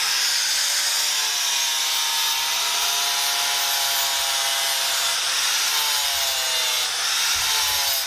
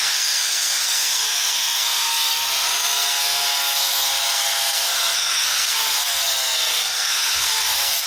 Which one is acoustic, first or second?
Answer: first